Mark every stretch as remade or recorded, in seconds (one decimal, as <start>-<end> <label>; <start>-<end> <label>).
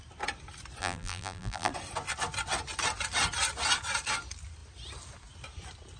0.0-0.8 recorded; 0.8-1.7 remade; 1.7-6.0 recorded